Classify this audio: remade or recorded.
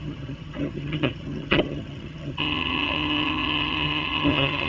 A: remade